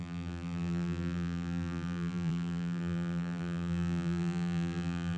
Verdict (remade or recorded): remade